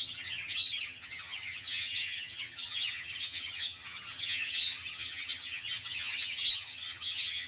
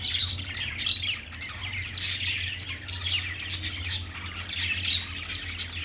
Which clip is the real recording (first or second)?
second